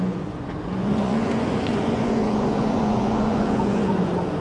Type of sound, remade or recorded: remade